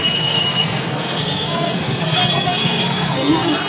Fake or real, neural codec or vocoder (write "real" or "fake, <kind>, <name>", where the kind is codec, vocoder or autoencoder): fake, codec, SNAC